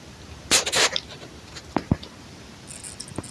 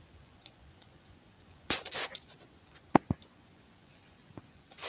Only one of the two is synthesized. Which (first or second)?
second